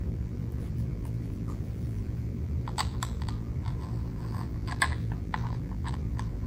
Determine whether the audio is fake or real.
fake